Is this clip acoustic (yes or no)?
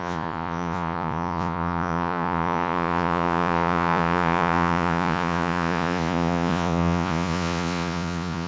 no